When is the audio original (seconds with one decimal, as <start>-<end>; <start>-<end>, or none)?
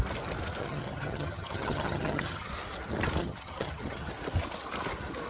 0.0-0.6; 2.5-3.2; 4.1-5.3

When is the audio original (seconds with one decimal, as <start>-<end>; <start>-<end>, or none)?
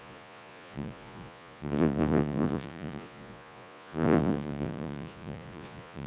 none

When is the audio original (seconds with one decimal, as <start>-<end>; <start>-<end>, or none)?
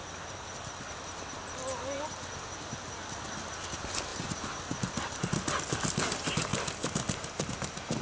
0.0-8.0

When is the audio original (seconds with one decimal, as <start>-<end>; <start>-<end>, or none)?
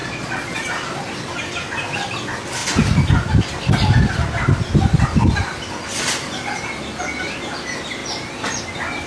0.7-9.1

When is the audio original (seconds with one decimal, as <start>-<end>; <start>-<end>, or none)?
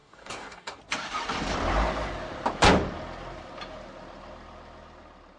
0.8-5.4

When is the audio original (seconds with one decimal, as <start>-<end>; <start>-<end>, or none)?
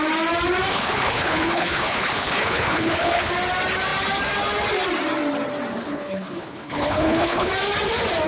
0.0-0.7; 3.3-5.8; 7.5-8.3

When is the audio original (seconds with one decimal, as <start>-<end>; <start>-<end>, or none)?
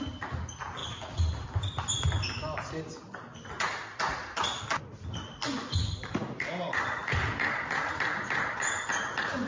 0.0-7.0; 8.9-9.5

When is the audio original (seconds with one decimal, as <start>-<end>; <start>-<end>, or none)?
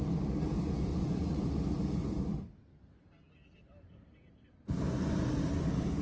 0.0-0.9; 1.5-6.0